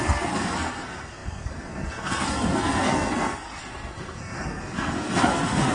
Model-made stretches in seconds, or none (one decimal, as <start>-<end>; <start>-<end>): 0.0-5.7